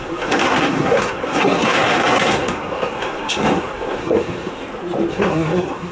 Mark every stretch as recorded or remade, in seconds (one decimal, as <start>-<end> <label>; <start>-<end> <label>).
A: 0.0-4.5 remade; 4.5-5.1 recorded; 5.1-5.9 remade